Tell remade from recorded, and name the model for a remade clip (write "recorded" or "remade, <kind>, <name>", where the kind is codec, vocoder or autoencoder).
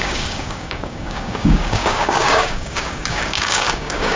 remade, codec, DAC